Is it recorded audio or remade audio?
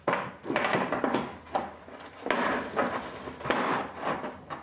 recorded